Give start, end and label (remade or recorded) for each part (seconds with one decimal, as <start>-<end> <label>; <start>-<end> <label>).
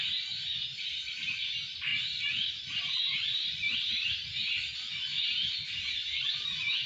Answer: 0.0-6.9 recorded